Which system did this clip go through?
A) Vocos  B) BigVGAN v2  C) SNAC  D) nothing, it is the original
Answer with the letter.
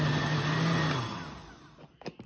D